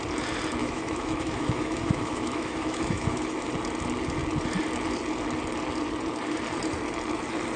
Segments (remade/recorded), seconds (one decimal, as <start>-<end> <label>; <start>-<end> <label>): 0.0-0.6 recorded; 0.6-3.5 remade; 3.5-7.6 recorded